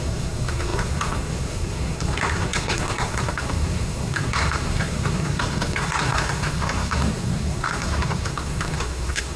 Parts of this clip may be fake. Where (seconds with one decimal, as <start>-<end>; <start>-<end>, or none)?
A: 0.0-9.4